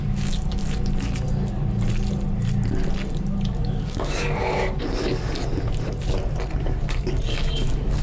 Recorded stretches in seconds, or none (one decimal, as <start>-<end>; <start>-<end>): 0.6-3.5; 5.4-6.6